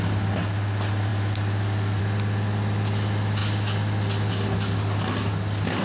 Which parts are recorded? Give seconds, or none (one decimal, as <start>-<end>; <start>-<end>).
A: 0.0-5.8